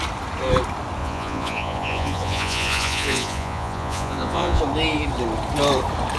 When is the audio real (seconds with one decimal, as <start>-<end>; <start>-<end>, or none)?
0.0-1.0; 4.6-6.2